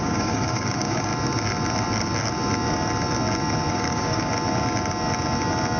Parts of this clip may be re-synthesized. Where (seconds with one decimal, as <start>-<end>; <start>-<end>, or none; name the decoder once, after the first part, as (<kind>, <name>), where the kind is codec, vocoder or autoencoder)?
0.0-1.1 (codec, DAC); 3.7-4.3